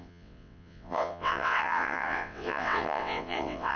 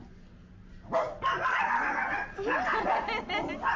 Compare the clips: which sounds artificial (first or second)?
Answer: first